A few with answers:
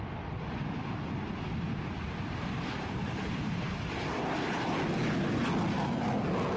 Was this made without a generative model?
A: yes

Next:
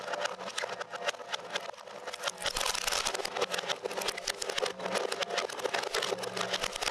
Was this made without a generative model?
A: yes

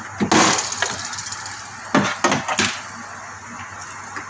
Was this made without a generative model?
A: yes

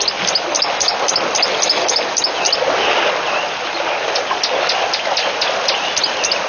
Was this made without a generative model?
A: yes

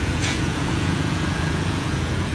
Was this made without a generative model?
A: no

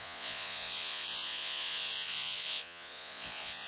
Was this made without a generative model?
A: no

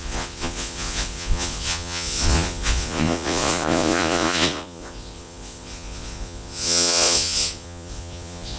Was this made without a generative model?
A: no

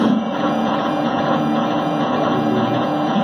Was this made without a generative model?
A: no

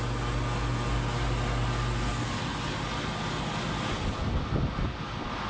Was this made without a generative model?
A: yes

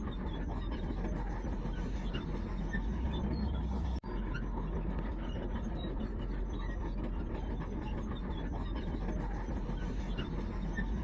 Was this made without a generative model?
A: yes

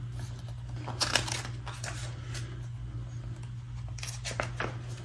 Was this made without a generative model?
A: yes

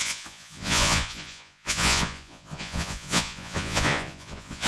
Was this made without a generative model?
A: no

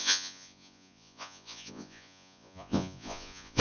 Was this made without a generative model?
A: no